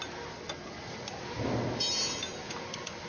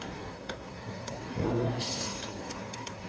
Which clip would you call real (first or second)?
first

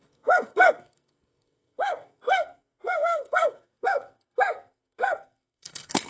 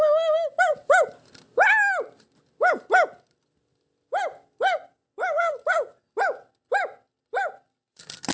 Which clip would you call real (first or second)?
second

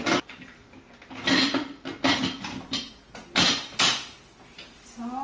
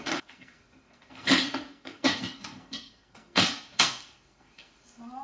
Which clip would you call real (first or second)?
first